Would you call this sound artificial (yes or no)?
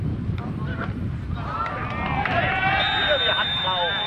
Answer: no